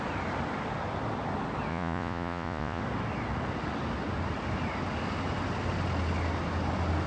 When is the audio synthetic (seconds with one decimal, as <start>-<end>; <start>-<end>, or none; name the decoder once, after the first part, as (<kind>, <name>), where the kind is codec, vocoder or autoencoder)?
1.7-2.8 (vocoder, Vocos)